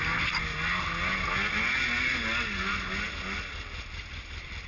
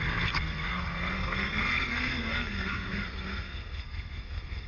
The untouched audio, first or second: first